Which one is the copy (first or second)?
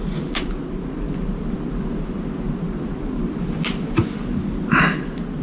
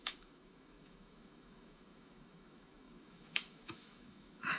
second